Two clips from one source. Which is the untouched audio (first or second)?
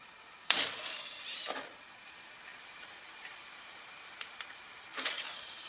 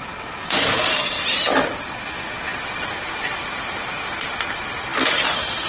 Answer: second